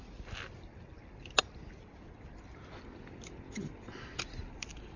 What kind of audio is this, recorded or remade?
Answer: recorded